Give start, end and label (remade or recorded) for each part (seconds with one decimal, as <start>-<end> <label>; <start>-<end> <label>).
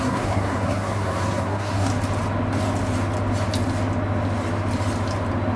0.0-1.9 remade; 1.9-5.6 recorded